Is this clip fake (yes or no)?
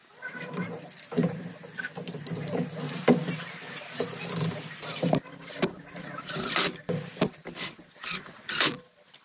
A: yes